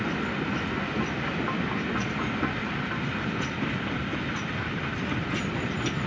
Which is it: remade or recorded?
recorded